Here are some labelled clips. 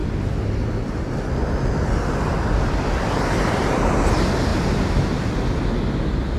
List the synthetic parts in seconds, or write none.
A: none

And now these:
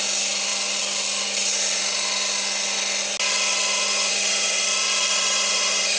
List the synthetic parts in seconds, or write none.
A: none